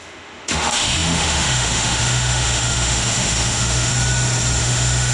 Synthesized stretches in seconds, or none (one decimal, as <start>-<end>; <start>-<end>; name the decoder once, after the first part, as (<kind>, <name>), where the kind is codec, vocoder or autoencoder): 0.0-3.9 (autoencoder, DAC-VAE); 4.6-5.1